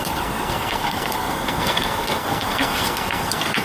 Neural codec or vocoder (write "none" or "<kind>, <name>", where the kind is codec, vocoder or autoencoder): codec, SNAC